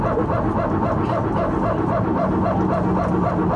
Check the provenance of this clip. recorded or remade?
recorded